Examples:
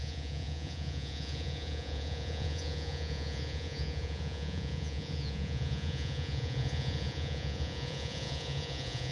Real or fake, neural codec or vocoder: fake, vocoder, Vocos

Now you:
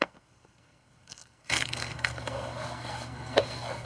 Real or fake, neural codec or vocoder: fake, codec, SNAC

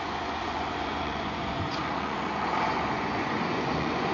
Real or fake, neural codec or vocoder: fake, vocoder, Vocos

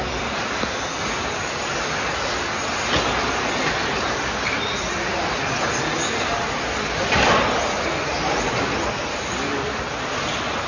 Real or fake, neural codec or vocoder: real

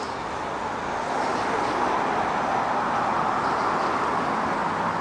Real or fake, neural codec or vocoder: real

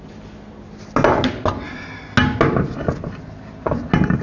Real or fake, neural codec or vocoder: real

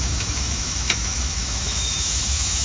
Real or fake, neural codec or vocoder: fake, autoencoder, DAC-VAE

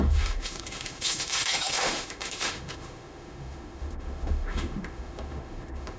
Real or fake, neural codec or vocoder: fake, autoencoder, DAC-VAE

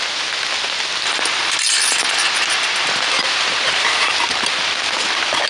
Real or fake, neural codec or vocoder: real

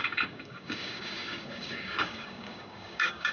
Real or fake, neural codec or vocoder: fake, codec, DAC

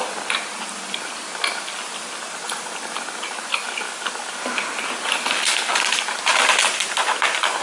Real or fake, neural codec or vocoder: real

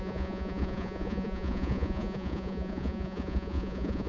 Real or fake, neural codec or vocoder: fake, vocoder, Vocos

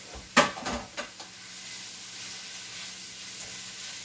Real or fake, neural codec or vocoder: real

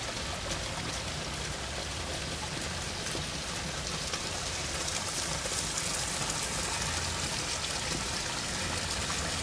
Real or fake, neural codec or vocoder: real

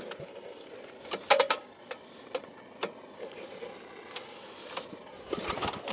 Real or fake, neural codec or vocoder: real